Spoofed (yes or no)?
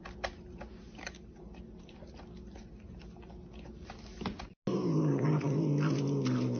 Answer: no